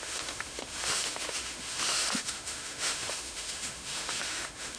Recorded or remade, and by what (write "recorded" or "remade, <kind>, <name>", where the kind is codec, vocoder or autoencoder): remade, autoencoder, DAC-VAE